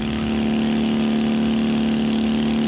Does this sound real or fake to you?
real